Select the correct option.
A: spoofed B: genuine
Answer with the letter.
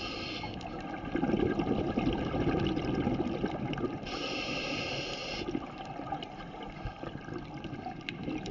B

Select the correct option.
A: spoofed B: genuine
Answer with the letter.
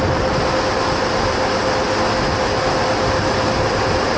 B